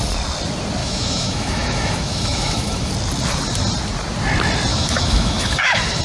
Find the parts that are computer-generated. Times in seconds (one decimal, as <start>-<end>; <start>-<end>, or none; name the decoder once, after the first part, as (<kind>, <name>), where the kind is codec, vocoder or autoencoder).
0.8-2.9 (autoencoder, DAC-VAE); 4.7-6.0